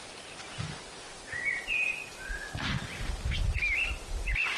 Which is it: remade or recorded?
recorded